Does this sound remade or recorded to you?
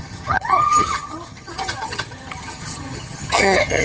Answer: remade